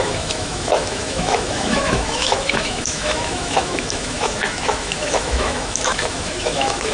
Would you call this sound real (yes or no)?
no